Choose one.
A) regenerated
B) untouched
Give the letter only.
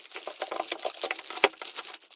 B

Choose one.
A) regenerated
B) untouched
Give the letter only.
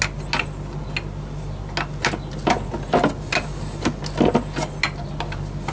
B